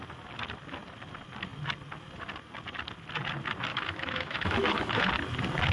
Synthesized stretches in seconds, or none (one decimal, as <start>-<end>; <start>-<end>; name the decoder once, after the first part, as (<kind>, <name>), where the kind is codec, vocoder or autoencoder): 3.7-5.1 (autoencoder, DAC-VAE)